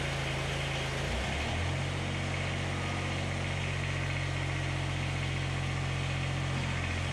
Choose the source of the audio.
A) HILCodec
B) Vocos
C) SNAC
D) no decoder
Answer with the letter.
D